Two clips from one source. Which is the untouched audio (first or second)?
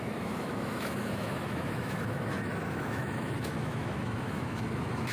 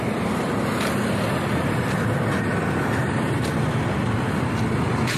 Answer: second